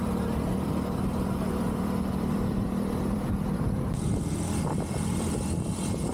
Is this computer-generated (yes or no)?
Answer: yes